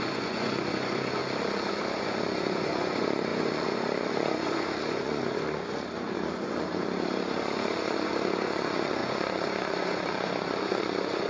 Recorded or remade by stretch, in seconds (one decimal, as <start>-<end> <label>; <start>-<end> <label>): 0.0-1.2 remade; 1.2-1.7 recorded; 1.7-11.3 remade